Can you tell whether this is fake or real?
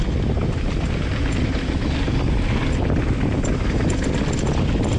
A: real